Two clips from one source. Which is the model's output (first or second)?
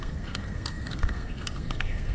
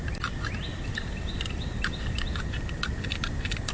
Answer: first